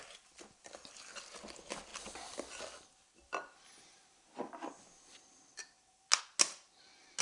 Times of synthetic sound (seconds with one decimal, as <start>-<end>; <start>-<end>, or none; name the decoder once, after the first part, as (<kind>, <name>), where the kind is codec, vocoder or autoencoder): none